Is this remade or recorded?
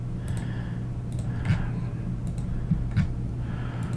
recorded